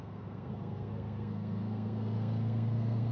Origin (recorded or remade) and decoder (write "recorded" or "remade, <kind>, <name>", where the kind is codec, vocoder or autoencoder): remade, codec, SNAC